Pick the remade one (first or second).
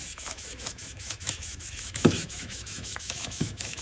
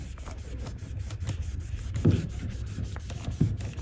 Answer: first